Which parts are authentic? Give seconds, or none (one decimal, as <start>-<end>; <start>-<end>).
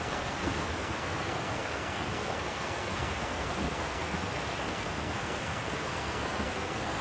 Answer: none